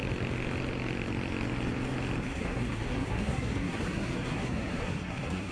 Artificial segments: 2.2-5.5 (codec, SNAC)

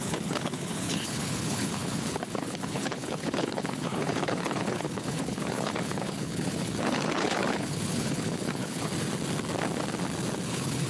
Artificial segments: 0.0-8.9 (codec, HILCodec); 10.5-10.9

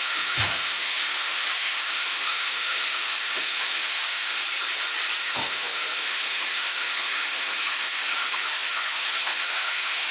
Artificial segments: 0.0-4.4 (autoencoder, DAC-VAE); 5.2-10.1

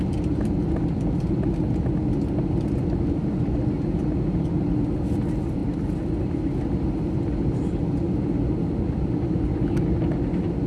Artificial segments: none